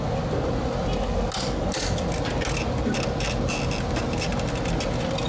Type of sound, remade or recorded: recorded